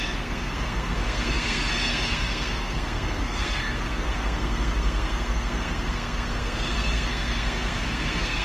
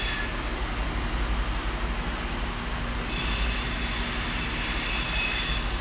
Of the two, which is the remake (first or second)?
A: first